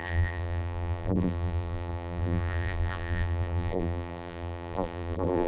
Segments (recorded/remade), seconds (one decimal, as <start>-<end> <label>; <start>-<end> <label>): 0.0-5.5 remade